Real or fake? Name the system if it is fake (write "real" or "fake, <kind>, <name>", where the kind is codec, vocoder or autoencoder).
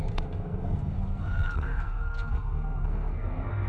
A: fake, codec, SNAC